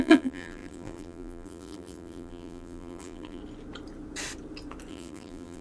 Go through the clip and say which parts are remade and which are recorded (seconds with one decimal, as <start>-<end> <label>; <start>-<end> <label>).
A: 0.0-3.4 remade; 3.4-4.9 recorded; 4.9-5.6 remade